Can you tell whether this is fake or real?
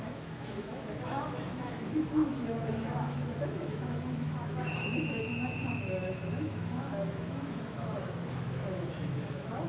fake